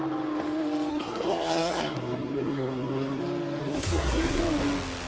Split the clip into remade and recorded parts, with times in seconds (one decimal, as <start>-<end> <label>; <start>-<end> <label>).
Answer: 0.0-0.9 recorded; 0.9-3.2 remade; 3.2-3.6 recorded; 3.6-4.4 remade; 4.4-5.1 recorded